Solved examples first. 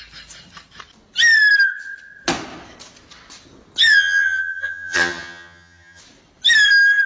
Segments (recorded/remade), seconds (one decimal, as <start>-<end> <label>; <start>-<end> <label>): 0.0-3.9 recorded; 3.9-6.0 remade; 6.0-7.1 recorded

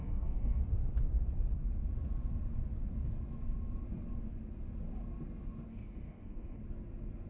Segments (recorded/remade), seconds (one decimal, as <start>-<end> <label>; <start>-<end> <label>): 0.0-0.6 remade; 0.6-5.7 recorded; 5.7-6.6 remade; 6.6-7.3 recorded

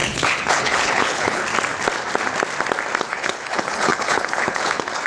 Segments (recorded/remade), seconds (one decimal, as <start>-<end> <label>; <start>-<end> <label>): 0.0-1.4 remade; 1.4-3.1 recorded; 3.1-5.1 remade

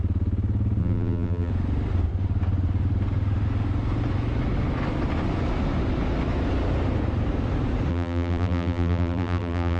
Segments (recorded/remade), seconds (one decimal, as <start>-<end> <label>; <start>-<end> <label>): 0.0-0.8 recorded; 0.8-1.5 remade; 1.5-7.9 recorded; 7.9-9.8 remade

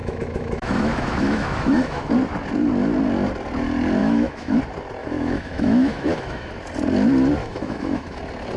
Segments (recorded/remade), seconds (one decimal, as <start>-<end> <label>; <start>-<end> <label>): 0.0-2.1 remade; 2.1-4.0 recorded; 4.0-4.6 remade; 4.6-5.0 recorded; 5.0-6.5 remade; 6.5-7.4 recorded; 7.4-8.2 remade; 8.2-8.6 recorded

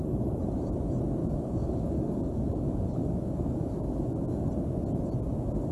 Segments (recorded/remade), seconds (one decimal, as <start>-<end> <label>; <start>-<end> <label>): 0.0-1.2 recorded; 1.2-4.5 remade; 4.5-5.7 recorded